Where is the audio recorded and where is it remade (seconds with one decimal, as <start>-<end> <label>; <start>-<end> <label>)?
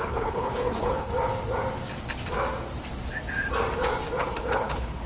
0.0-1.1 remade; 1.1-4.2 recorded; 4.2-5.1 remade